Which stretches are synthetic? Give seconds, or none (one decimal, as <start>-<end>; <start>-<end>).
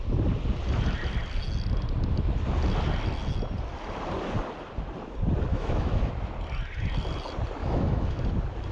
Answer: 5.5-6.1; 7.6-8.2